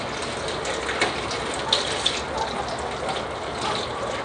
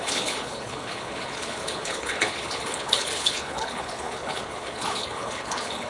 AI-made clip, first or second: second